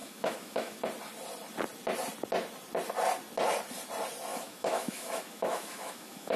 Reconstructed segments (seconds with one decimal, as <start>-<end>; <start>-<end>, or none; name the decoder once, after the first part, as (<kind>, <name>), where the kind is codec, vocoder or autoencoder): 0.0-0.8 (autoencoder, DAC-VAE); 4.3-6.4